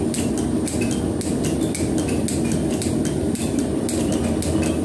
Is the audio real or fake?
real